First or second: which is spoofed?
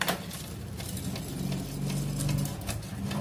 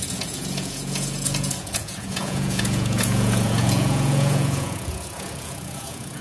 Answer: second